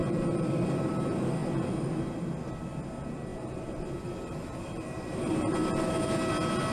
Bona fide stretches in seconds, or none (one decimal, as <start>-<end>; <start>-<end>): 0.9-3.3; 5.3-6.7